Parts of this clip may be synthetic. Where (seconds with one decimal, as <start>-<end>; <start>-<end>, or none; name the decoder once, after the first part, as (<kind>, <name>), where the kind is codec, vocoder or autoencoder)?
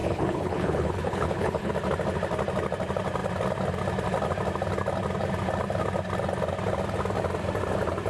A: 0.0-1.7 (codec, HILCodec)